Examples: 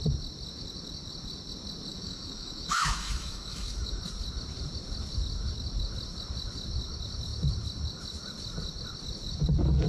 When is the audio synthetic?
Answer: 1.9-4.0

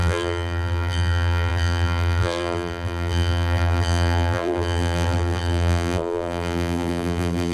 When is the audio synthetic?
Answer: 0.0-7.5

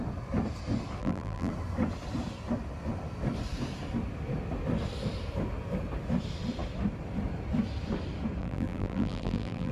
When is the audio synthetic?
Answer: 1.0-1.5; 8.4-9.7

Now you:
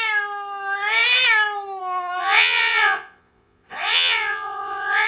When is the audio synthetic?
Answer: 2.2-5.1

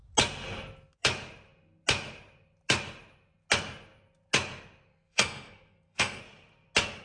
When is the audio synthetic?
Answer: 4.9-6.2

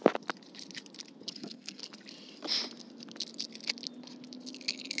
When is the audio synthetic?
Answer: 1.3-1.8